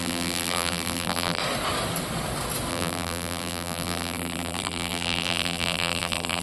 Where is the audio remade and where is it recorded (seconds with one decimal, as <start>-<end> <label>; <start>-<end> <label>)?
0.0-1.4 remade; 1.4-2.7 recorded; 2.7-6.4 remade